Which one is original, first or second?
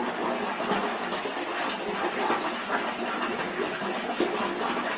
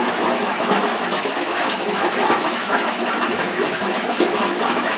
first